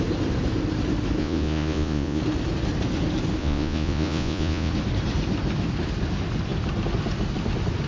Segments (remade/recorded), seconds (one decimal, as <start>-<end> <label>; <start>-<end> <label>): 0.0-1.2 recorded; 1.2-2.2 remade; 2.2-3.4 recorded; 3.4-4.7 remade; 4.7-7.9 recorded